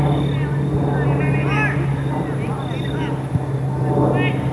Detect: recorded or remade recorded